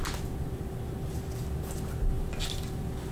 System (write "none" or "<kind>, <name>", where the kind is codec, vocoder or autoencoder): none